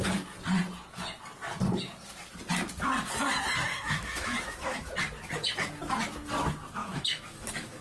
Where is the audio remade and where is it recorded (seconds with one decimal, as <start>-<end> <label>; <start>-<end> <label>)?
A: 0.0-3.7 recorded; 3.7-4.9 remade; 4.9-6.8 recorded; 6.8-7.8 remade